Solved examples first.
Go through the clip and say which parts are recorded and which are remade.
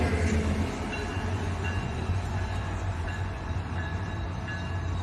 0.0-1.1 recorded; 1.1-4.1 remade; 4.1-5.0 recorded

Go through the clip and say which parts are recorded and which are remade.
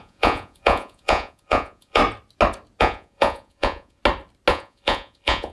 0.0-2.0 remade; 2.0-2.8 recorded; 2.8-4.0 remade; 4.0-4.5 recorded; 4.5-5.5 remade